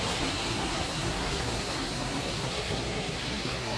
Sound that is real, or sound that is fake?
fake